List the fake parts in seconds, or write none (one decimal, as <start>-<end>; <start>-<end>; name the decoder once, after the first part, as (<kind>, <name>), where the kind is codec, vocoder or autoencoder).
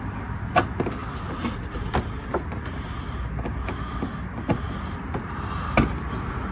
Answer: none